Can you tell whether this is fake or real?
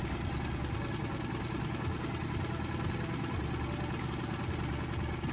real